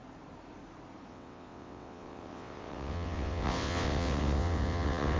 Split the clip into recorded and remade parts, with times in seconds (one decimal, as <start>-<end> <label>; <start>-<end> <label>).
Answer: 0.0-1.1 recorded; 1.1-5.2 remade